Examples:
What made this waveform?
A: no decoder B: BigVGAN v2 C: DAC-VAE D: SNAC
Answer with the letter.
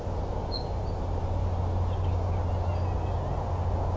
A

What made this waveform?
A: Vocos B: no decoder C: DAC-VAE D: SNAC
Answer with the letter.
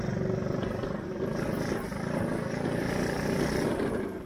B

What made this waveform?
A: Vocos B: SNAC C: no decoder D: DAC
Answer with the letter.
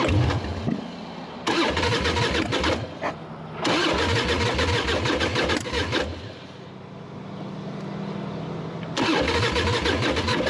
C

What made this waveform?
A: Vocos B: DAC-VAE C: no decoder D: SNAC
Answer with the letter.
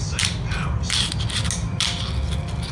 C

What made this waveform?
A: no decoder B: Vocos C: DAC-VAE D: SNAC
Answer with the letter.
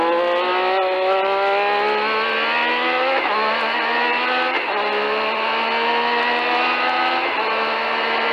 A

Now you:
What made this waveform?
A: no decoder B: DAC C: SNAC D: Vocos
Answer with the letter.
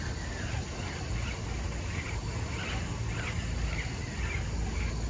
A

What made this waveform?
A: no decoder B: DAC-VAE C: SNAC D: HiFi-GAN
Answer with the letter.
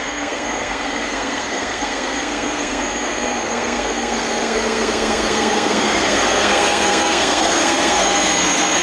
C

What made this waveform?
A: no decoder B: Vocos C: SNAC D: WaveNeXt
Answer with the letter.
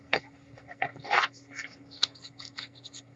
C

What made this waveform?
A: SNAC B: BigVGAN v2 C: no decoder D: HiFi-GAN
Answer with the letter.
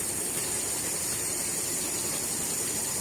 C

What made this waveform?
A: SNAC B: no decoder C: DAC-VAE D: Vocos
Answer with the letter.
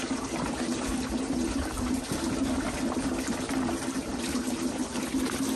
B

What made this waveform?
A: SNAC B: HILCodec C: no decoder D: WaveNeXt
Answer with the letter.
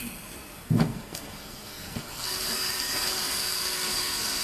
A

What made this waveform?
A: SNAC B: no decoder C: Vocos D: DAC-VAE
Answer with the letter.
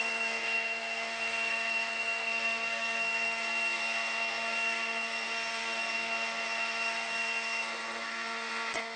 A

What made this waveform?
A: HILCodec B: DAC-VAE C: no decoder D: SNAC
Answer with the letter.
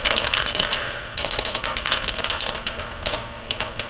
D